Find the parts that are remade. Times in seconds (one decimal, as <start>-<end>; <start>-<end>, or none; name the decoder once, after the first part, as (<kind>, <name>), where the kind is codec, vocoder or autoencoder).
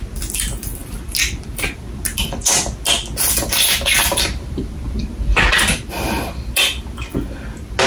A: none